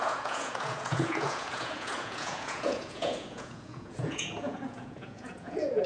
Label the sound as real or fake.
fake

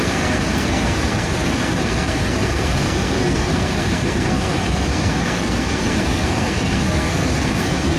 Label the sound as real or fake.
fake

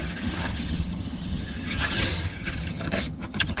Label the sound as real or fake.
fake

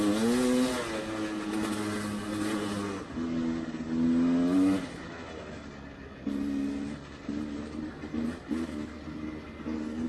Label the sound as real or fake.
real